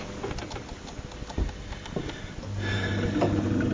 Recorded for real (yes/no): yes